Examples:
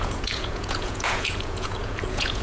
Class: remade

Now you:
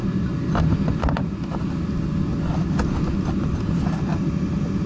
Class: recorded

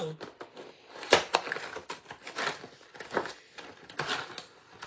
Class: recorded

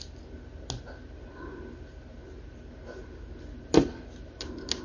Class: recorded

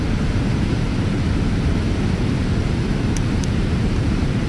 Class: remade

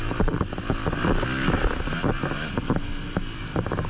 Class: recorded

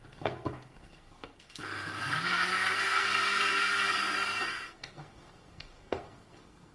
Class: remade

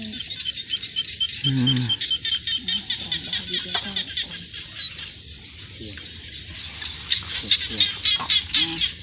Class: recorded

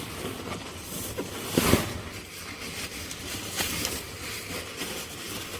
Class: recorded